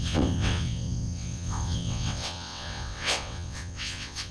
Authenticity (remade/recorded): remade